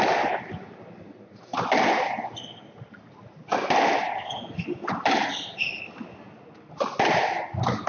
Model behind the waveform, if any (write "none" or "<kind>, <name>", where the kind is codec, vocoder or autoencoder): none